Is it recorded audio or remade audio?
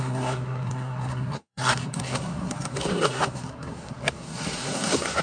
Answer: remade